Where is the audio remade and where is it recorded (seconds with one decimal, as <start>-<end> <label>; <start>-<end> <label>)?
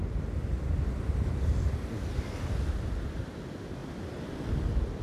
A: 0.0-5.0 recorded